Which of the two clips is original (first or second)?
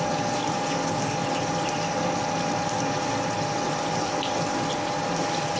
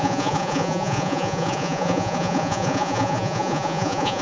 first